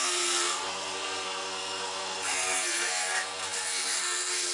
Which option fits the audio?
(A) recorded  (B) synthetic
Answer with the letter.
B